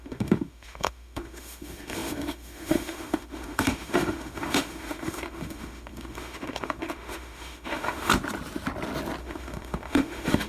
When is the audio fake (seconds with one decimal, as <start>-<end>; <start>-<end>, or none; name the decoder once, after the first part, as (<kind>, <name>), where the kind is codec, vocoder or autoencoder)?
0.0-8.1 (autoencoder, DAC-VAE); 9.2-10.5